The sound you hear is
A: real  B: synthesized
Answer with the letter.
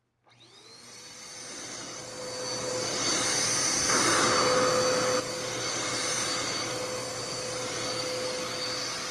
A